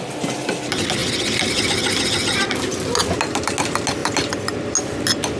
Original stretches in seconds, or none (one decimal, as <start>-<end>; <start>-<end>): 0.0-5.4